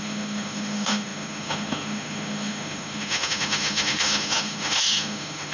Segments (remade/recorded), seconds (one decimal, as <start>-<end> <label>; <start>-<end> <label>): 0.0-5.5 remade